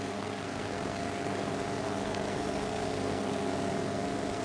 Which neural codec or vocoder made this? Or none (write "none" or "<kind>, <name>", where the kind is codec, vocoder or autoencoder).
codec, SNAC